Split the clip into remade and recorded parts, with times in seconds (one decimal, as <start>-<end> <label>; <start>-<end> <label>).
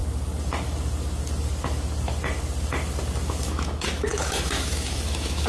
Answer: 0.0-3.3 recorded; 3.3-5.5 remade